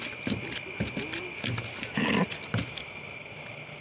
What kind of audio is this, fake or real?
real